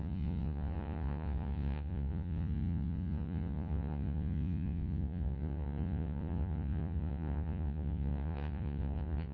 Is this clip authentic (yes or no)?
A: no